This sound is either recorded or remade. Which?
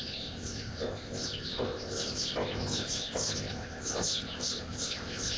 remade